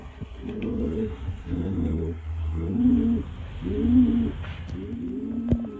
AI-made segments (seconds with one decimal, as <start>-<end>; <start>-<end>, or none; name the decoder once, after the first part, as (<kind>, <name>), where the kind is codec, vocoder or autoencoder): 0.0-2.8 (codec, SNAC)

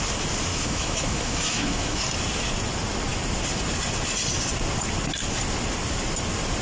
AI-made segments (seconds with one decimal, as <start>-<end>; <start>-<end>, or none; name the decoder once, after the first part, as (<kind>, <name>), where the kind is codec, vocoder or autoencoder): 0.5-2.0 (autoencoder, DAC-VAE)

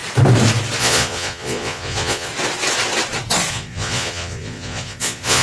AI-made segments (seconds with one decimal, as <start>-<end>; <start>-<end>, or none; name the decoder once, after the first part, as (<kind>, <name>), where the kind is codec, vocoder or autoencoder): 0.8-2.3 (vocoder, Vocos); 3.5-5.4